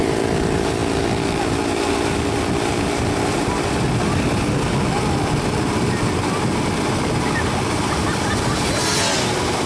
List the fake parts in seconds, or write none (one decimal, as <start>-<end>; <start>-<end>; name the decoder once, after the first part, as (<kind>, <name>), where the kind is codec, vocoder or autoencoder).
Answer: none